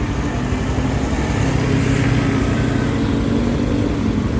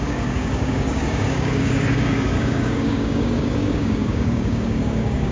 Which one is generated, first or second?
second